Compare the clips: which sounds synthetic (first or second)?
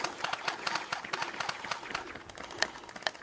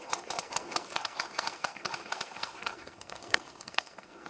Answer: second